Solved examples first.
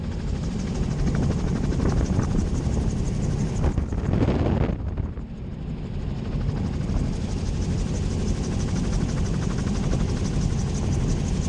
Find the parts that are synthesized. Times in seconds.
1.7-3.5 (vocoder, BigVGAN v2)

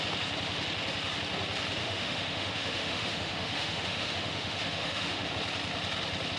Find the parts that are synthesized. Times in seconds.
1.8-5.3 (autoencoder, DAC-VAE)

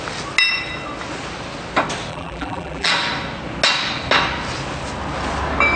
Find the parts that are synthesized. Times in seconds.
2.1-2.9 (vocoder, BigVGAN v2)